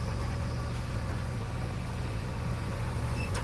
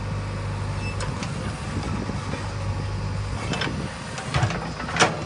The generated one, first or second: first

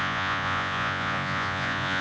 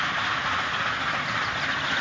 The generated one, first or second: first